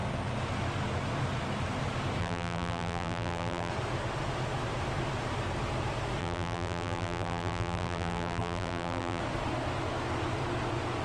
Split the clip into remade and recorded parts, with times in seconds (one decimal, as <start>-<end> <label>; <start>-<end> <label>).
0.0-2.2 recorded; 2.2-3.7 remade; 3.7-6.2 recorded; 6.2-9.2 remade; 9.2-11.0 recorded